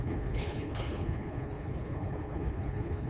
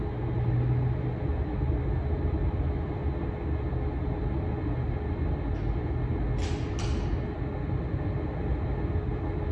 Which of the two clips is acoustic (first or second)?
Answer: second